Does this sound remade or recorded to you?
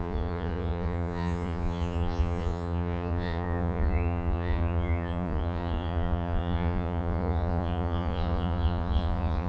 remade